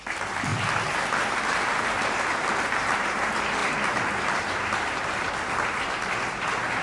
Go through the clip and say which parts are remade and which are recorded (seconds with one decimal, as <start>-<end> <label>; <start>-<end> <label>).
0.0-6.8 recorded